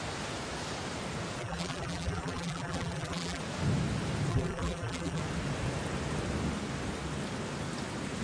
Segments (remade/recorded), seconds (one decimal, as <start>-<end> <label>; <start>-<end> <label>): 0.0-1.4 recorded; 1.4-3.4 remade; 3.4-4.3 recorded; 4.3-5.2 remade; 5.2-8.2 recorded